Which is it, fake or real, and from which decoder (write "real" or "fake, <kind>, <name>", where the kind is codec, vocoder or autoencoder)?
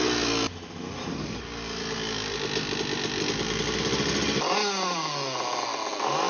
real